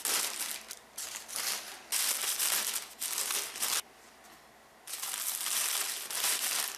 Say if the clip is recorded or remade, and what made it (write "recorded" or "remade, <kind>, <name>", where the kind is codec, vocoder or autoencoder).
recorded